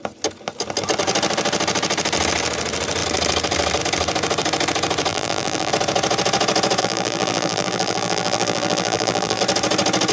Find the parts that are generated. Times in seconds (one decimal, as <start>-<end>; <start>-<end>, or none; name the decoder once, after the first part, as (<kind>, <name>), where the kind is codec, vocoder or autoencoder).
5.1-5.7 (vocoder, BigVGAN v2); 6.8-9.4